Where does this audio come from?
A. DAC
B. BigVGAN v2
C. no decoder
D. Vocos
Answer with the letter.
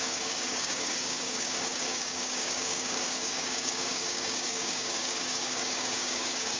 A